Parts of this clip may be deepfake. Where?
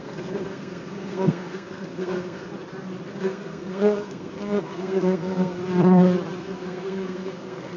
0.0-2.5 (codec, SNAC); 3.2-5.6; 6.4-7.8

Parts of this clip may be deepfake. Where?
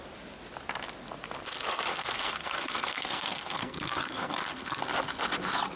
1.9-4.8 (codec, SNAC)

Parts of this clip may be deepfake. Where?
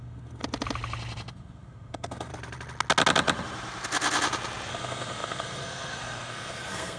0.0-0.4 (codec, SNAC); 1.3-2.3; 4.7-7.0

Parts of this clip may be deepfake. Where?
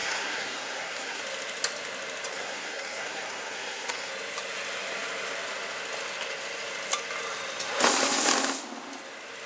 0.0-1.2 (codec, SNAC); 2.3-4.1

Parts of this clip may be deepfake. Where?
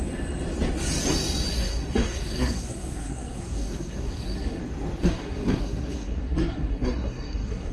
1.5-4.6 (codec, SNAC); 5.0-7.7